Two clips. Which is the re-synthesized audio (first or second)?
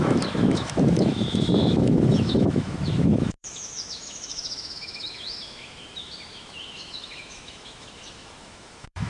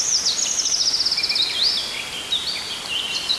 first